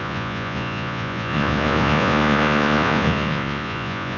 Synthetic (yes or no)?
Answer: yes